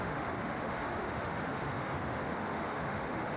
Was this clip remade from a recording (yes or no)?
yes